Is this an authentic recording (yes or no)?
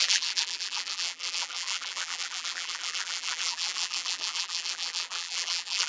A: no